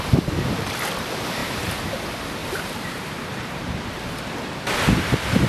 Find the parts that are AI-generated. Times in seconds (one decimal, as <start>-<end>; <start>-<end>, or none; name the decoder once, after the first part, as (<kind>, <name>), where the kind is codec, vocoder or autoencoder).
1.4-2.0 (vocoder, BigVGAN v2); 2.4-4.2